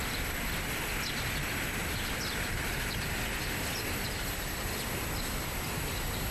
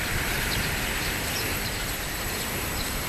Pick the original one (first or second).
first